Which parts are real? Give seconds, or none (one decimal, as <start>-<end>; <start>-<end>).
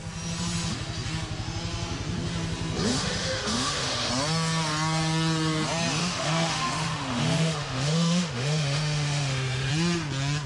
0.0-2.9; 4.1-6.0; 9.7-10.5